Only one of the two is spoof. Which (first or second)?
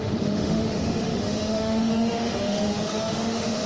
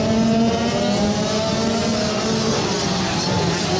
first